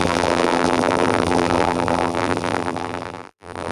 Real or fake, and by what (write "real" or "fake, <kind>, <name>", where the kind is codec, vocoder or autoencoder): fake, vocoder, BigVGAN v2